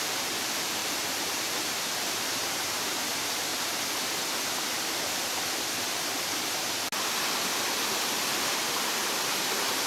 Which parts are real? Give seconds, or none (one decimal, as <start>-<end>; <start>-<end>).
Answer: 3.5-8.5